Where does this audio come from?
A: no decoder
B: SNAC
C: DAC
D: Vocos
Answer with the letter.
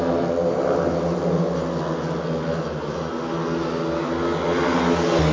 A